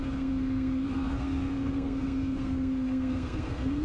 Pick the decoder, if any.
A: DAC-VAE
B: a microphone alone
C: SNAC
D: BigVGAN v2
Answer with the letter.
C